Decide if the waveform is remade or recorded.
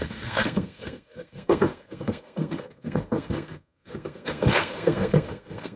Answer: remade